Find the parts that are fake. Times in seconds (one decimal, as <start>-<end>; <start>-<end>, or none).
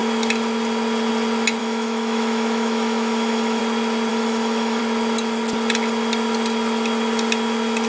1.6-3.6; 4.1-4.8